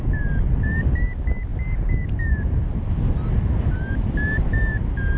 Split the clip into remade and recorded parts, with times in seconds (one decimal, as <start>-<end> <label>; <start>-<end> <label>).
0.0-5.2 recorded